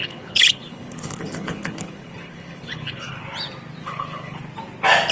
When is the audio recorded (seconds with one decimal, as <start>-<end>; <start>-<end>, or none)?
3.1-3.8; 4.4-5.1

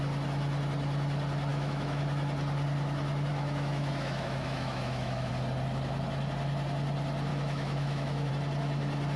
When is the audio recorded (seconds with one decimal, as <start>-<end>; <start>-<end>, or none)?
0.0-1.5; 2.0-3.3; 5.3-7.3; 8.3-9.2

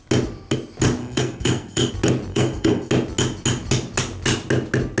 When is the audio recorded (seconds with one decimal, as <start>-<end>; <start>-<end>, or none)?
0.0-1.0; 1.9-2.3; 2.9-5.0

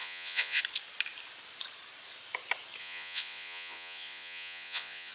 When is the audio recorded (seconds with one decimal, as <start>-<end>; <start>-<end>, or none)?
0.6-2.8

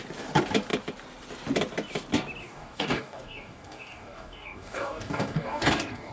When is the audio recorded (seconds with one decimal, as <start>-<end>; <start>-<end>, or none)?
0.0-2.4